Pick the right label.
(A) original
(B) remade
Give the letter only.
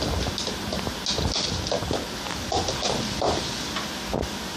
A